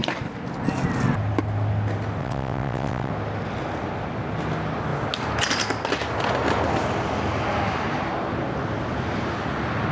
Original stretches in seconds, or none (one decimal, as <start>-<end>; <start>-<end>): 0.0-2.2; 3.1-9.9